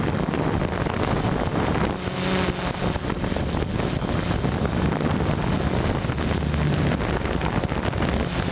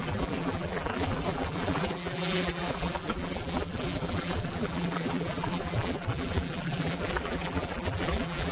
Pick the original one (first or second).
first